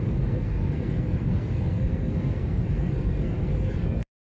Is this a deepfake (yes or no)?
yes